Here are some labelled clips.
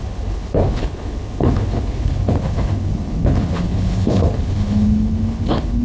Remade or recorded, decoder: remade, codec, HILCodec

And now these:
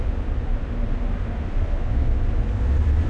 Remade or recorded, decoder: recorded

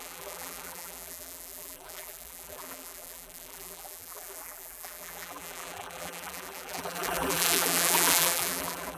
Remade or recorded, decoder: remade, vocoder, BigVGAN v2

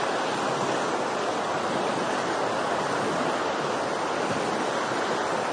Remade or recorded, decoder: recorded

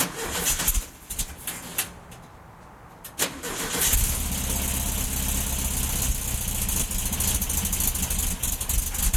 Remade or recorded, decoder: recorded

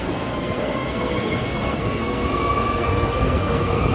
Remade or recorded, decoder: remade, codec, SNAC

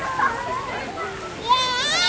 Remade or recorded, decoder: recorded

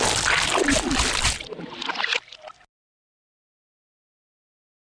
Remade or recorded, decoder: recorded